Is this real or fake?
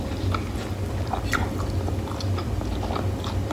real